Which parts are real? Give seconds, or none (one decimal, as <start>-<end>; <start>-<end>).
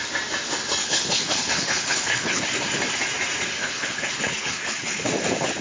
0.0-0.8; 2.4-3.6; 5.1-5.6